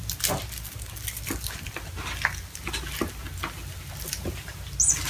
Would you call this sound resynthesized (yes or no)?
no